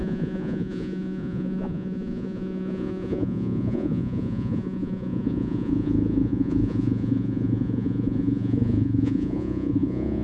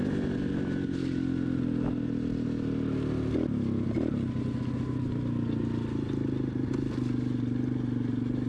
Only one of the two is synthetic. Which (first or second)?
first